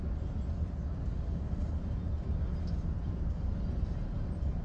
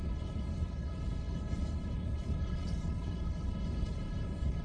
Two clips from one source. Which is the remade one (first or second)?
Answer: second